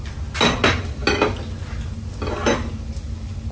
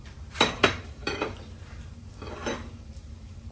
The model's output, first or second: second